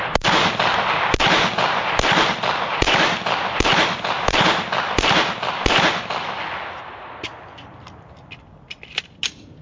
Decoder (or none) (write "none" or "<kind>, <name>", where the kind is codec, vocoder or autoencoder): none